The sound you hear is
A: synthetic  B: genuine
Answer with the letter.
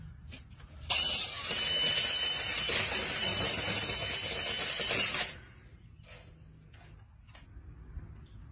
B